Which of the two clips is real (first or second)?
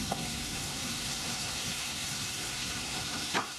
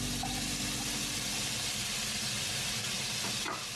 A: second